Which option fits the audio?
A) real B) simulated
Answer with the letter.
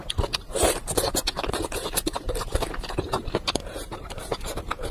B